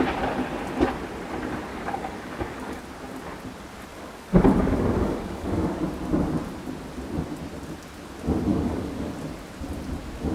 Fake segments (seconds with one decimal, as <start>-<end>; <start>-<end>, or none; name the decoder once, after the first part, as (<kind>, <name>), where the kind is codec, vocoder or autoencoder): 1.7-2.8 (codec, DAC); 3.9-5.8; 8.5-9.1